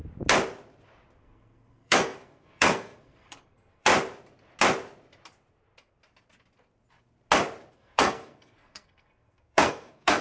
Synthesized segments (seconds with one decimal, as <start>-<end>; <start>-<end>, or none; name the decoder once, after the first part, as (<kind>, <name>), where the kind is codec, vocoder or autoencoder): 1.2-3.9 (codec, SNAC); 7.7-10.2